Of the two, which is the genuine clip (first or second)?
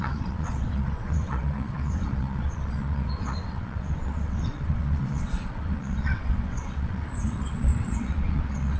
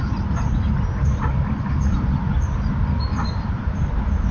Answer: second